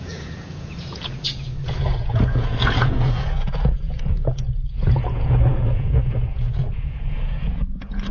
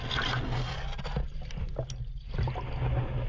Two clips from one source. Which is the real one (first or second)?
second